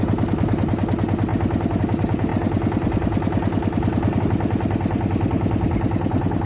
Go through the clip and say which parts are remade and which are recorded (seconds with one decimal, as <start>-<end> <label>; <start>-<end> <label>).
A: 0.0-6.5 recorded